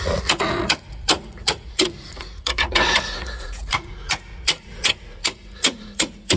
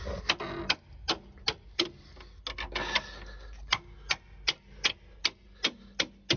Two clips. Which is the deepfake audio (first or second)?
first